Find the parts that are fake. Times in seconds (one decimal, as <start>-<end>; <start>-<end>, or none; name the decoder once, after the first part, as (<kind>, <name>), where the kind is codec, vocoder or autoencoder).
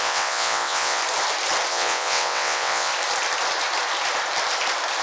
0.0-1.0 (vocoder, WaveNeXt); 1.7-2.9